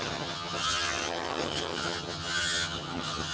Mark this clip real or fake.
fake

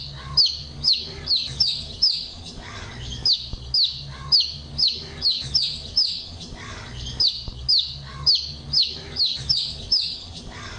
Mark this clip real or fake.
fake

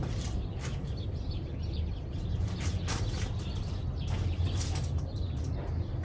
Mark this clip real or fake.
real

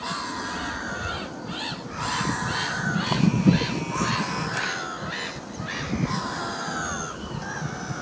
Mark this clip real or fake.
real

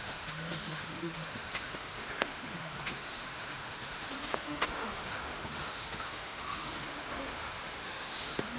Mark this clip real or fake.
fake